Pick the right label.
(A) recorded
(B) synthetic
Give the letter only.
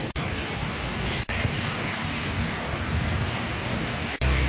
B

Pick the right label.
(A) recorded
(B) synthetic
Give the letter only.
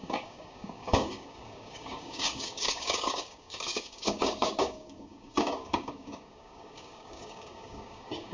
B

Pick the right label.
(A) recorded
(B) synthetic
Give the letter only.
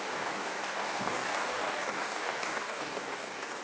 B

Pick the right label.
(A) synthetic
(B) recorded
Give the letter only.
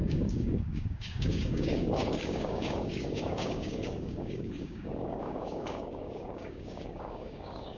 A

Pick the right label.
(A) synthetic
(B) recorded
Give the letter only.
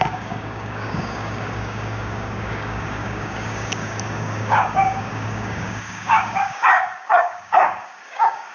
A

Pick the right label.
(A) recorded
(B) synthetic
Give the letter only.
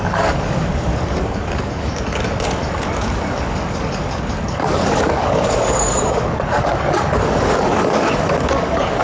B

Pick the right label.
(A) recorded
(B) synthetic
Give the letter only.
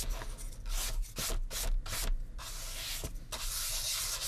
A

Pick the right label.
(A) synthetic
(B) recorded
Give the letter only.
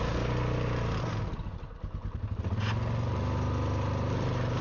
B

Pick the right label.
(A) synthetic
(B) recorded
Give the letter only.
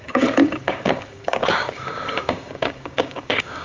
A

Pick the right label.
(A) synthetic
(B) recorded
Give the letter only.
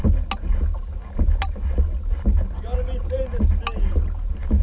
B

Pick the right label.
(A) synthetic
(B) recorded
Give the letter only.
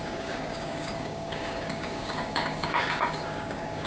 A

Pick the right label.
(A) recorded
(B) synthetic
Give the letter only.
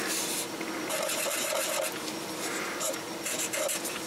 A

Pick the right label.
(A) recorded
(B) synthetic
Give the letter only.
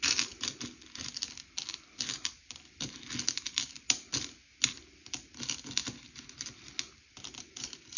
A